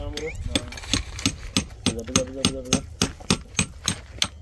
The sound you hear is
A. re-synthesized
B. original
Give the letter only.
B